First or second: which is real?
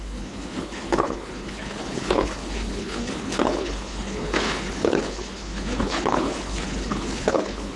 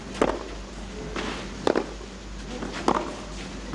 second